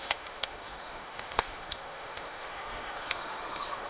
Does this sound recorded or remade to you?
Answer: remade